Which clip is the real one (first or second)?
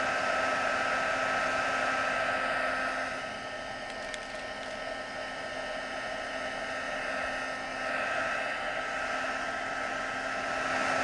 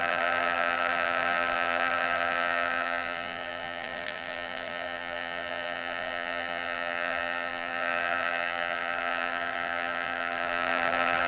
first